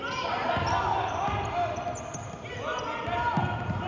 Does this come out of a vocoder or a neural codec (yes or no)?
no